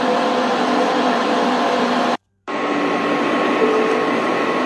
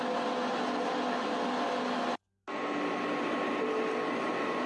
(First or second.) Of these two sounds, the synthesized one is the first